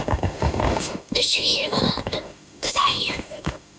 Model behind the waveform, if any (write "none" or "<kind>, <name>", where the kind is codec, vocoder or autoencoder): autoencoder, DAC-VAE